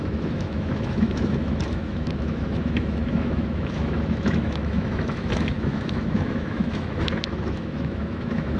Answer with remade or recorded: remade